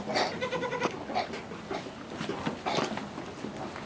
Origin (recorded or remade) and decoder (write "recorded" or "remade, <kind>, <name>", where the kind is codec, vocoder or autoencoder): recorded